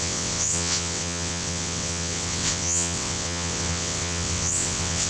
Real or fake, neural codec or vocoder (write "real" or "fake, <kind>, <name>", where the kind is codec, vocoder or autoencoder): fake, vocoder, WaveNeXt